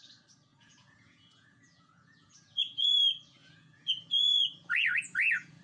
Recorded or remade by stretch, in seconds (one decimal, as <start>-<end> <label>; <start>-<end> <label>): 0.0-0.5 recorded; 0.5-2.9 remade; 2.9-3.4 recorded; 3.4-5.6 remade